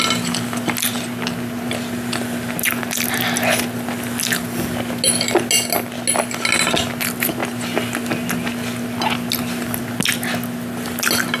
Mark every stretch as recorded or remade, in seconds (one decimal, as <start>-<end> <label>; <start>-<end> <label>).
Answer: 0.0-11.4 recorded